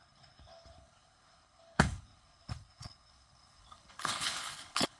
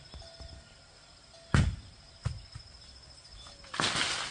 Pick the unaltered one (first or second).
second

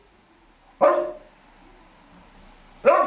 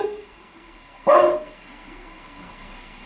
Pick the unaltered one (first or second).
first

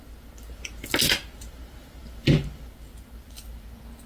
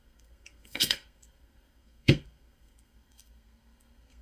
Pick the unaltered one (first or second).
first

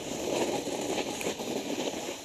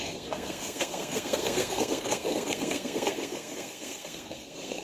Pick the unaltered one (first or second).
first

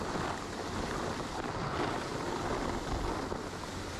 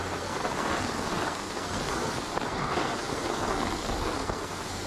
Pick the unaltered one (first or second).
first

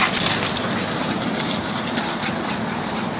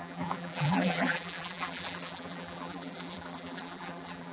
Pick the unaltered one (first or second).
first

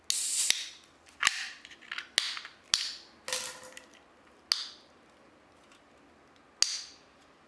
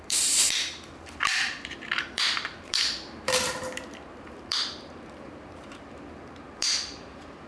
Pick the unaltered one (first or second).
first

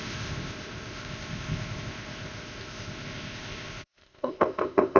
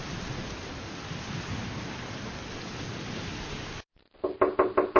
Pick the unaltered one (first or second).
second